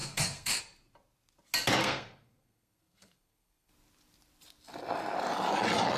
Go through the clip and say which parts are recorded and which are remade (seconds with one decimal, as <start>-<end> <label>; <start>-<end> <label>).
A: 0.0-0.6 remade; 0.6-1.8 recorded; 1.8-3.7 remade; 3.7-6.0 recorded

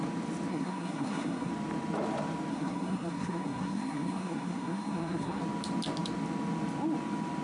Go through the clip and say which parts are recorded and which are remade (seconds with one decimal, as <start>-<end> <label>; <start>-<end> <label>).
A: 0.0-0.5 recorded; 0.5-1.5 remade; 1.5-2.5 recorded; 2.5-5.4 remade; 5.4-7.4 recorded

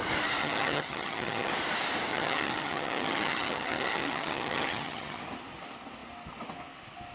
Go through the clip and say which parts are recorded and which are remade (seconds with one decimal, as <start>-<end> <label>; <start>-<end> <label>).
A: 0.0-0.4 recorded; 0.4-1.5 remade; 1.5-2.1 recorded; 2.1-5.2 remade; 5.2-7.1 recorded

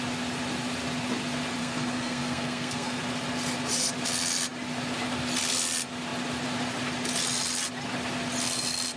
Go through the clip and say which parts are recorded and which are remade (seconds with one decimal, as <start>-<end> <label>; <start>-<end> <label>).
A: 0.0-1.6 recorded; 1.6-3.0 remade; 3.0-9.0 recorded

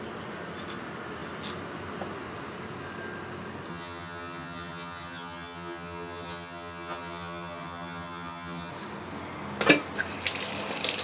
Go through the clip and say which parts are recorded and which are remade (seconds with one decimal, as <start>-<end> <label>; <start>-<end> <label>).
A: 0.0-3.7 recorded; 3.7-8.7 remade; 8.7-11.0 recorded

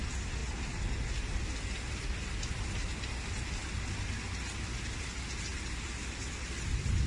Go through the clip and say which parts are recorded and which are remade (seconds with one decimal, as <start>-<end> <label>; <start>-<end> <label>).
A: 0.0-5.5 recorded; 5.5-6.4 remade; 6.4-7.1 recorded

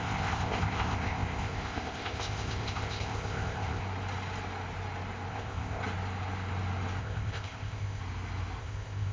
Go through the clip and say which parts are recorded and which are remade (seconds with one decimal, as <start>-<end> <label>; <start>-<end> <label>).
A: 0.0-3.8 remade; 3.8-5.3 recorded; 5.3-5.8 remade; 5.8-7.0 recorded; 7.0-8.0 remade; 8.0-8.6 recorded; 8.6-9.1 remade